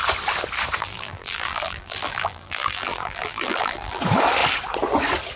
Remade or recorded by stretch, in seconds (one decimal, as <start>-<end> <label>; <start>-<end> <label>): 0.0-0.8 recorded; 0.8-4.0 remade; 4.0-5.4 recorded